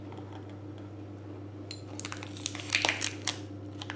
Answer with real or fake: real